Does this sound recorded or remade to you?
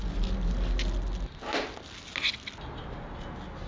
recorded